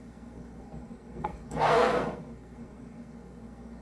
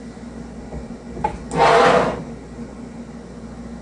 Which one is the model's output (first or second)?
first